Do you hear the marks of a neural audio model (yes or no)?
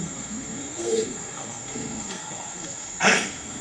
yes